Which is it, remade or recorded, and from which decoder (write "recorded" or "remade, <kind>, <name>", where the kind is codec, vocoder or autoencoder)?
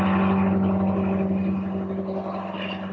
recorded